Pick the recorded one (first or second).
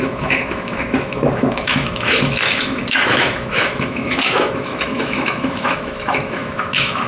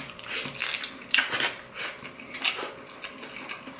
second